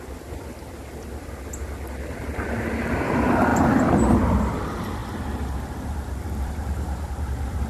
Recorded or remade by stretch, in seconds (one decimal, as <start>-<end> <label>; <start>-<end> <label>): 0.0-7.7 remade